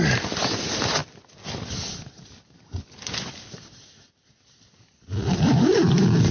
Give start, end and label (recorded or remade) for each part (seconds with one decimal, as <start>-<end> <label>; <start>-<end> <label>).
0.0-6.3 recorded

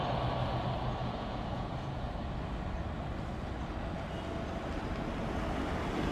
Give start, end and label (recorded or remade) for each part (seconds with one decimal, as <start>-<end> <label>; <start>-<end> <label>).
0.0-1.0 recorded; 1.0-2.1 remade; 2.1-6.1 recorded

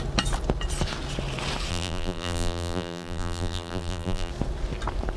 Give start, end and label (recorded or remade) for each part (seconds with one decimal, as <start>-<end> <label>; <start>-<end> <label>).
0.0-1.7 recorded; 1.7-4.3 remade; 4.3-5.2 recorded

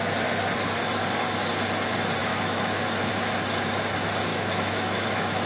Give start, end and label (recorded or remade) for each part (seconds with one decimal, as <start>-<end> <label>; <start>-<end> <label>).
0.0-2.2 recorded; 2.2-3.1 remade; 3.1-4.3 recorded; 4.3-5.5 remade

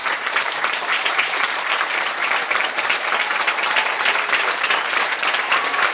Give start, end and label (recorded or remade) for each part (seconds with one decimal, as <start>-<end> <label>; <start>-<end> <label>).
0.0-5.9 remade

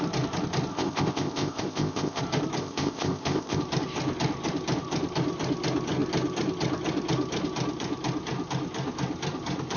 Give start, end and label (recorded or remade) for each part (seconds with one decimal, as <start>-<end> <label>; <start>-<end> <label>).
0.0-0.7 recorded; 0.7-2.2 remade; 2.2-2.6 recorded; 2.6-3.6 remade; 3.6-9.8 recorded